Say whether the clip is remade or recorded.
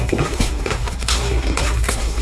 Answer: remade